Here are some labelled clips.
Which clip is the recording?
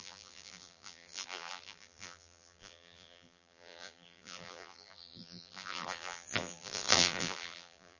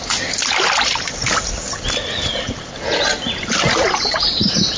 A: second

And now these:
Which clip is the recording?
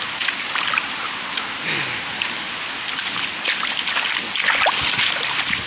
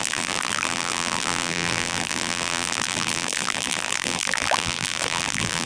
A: first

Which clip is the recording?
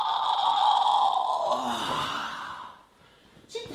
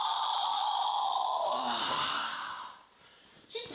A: first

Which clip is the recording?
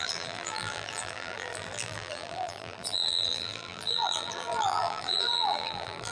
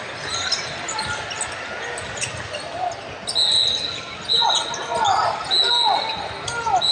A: second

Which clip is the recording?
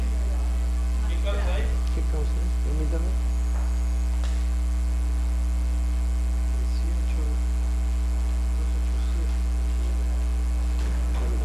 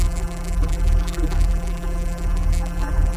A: first